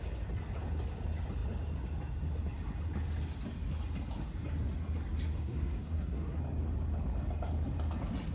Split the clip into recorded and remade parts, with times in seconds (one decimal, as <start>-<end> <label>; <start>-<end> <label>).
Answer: 0.0-5.4 recorded; 5.4-6.4 remade; 6.4-8.3 recorded